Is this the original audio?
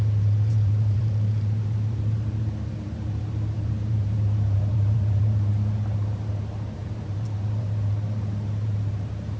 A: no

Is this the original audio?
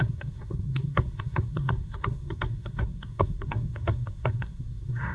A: no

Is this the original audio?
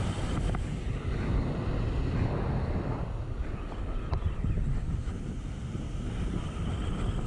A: yes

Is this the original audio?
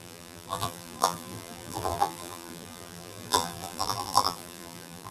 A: no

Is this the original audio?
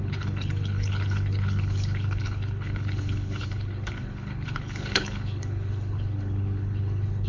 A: no